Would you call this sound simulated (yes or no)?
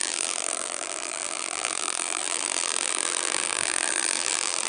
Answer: yes